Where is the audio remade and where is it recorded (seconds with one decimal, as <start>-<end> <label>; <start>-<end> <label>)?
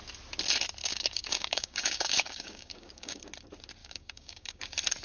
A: 0.0-0.8 recorded; 0.8-3.2 remade; 3.2-3.8 recorded; 3.8-4.6 remade; 4.6-5.0 recorded